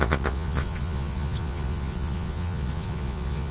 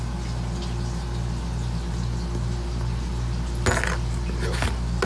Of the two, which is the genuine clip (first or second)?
second